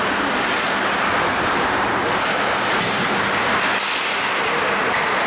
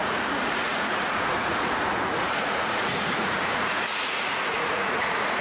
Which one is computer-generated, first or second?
second